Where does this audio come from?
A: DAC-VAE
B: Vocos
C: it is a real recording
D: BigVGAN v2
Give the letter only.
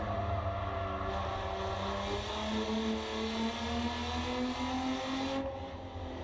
C